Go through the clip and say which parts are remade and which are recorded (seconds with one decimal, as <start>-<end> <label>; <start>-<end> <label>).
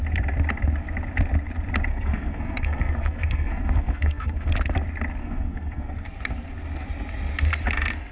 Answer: 0.0-1.9 recorded; 1.9-4.5 remade; 4.5-5.2 recorded; 5.2-5.9 remade; 5.9-8.1 recorded